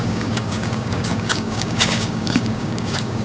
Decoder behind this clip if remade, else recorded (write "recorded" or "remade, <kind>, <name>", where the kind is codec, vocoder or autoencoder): remade, codec, DAC